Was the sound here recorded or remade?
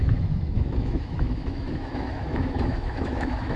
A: remade